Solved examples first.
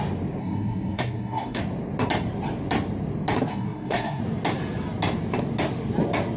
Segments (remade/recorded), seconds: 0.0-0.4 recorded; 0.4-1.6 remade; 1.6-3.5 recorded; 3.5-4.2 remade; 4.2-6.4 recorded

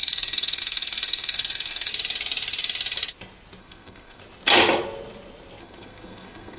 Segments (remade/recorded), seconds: 0.0-1.9 remade; 1.9-3.6 recorded; 3.6-4.2 remade; 4.2-5.6 recorded; 5.6-6.6 remade